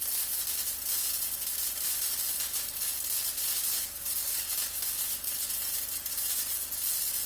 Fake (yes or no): no